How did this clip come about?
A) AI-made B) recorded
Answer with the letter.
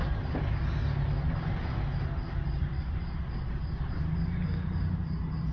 B